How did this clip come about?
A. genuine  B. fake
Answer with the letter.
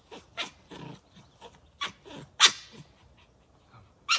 A